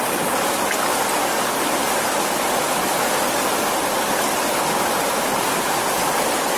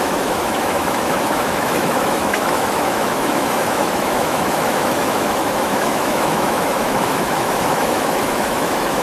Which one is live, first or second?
first